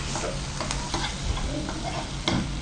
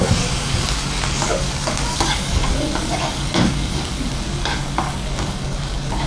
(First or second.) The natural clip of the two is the first